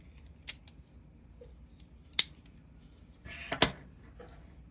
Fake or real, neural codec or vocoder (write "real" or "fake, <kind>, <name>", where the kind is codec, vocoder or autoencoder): real